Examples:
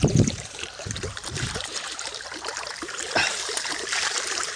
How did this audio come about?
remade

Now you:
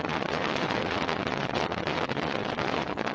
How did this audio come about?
remade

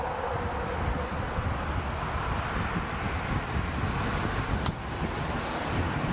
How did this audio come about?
recorded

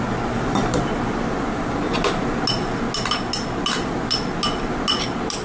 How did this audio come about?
recorded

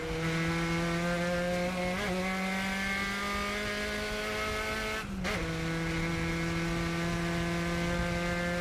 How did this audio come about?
recorded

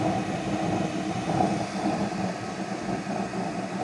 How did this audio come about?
remade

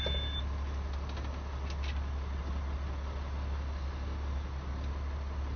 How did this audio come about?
recorded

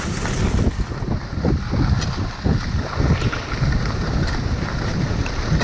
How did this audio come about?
recorded